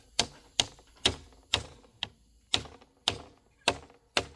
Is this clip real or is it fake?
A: real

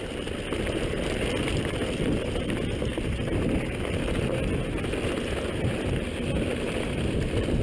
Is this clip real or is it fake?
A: real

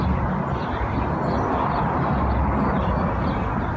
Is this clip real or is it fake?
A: real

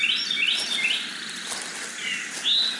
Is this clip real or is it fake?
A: real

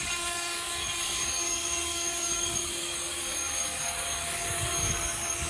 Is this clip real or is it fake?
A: fake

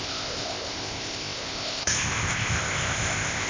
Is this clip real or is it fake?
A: fake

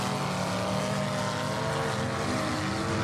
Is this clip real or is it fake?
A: real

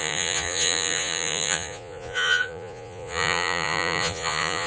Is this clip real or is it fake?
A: fake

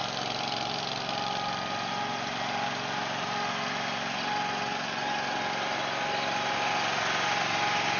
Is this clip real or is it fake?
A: real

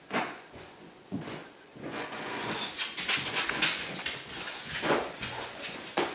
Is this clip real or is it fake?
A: fake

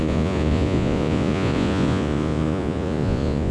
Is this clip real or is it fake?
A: fake